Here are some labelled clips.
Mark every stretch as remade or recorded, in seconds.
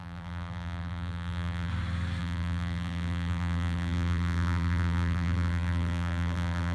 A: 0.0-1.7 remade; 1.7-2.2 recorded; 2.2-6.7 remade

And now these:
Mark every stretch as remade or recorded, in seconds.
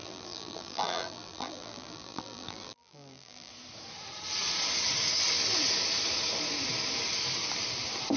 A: 0.0-3.5 remade; 3.5-8.2 recorded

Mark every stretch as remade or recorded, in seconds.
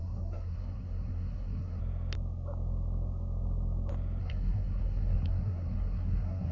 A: 0.0-1.8 remade; 1.8-4.2 recorded; 4.2-6.5 remade